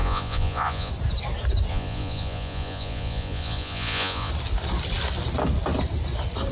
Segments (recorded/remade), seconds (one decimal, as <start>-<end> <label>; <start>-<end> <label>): 0.0-0.9 remade; 0.9-1.7 recorded; 1.7-4.3 remade; 4.3-6.5 recorded